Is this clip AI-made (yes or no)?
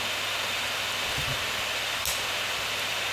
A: no